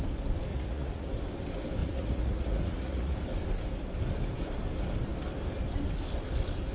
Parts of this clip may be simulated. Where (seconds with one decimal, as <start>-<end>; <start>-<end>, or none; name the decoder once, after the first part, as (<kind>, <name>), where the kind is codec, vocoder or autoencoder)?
0.5-1.1 (vocoder, Vocos); 1.8-3.2